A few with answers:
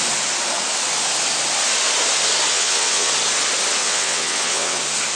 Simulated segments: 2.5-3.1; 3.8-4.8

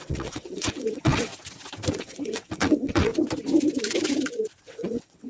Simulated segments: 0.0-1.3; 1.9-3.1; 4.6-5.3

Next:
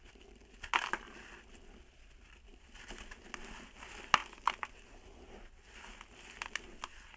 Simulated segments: none